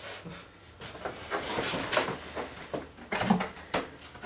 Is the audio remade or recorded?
recorded